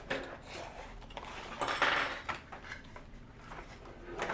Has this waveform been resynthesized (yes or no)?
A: no